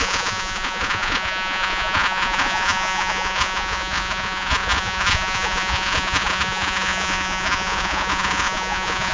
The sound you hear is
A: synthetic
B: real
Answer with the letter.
A